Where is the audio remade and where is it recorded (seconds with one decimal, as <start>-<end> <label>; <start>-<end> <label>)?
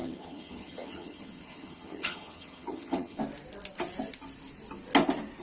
0.0-3.2 remade; 3.2-5.4 recorded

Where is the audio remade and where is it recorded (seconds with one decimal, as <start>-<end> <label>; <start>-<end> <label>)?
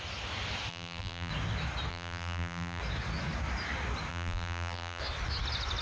0.0-0.7 recorded; 0.7-1.3 remade; 1.3-1.9 recorded; 1.9-2.8 remade; 2.8-4.1 recorded; 4.1-5.0 remade; 5.0-5.8 recorded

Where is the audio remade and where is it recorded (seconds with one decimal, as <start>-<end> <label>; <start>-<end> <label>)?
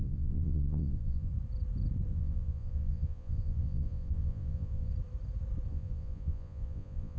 0.0-1.3 remade; 1.3-2.1 recorded; 2.1-4.9 remade; 4.9-5.7 recorded; 5.7-7.2 remade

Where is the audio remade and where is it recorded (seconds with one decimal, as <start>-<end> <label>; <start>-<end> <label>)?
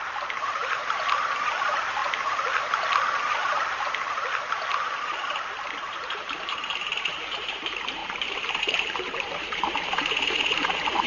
0.0-2.0 remade; 2.0-5.7 recorded; 5.7-11.1 remade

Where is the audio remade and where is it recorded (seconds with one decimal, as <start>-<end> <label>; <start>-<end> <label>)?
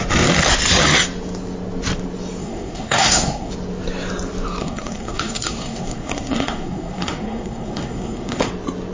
0.0-2.4 recorded; 2.4-3.5 remade; 3.5-4.6 recorded; 4.6-8.5 remade; 8.5-8.9 recorded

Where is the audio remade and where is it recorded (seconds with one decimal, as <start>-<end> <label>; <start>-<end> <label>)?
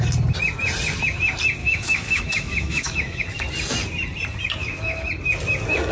0.0-1.6 recorded; 1.6-3.5 remade; 3.5-4.6 recorded; 4.6-5.1 remade; 5.1-5.9 recorded